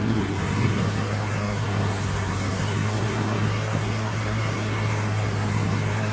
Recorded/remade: remade